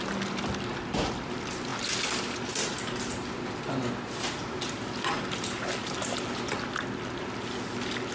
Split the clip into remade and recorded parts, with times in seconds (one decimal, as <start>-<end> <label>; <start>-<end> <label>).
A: 0.0-8.1 recorded